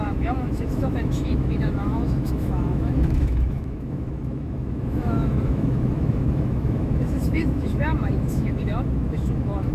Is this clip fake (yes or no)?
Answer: yes